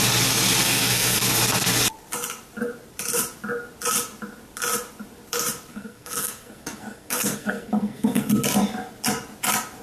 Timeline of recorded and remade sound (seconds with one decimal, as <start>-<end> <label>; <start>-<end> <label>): 0.0-0.6 recorded; 0.6-1.2 remade; 1.2-5.7 recorded; 5.7-8.3 remade; 8.3-9.8 recorded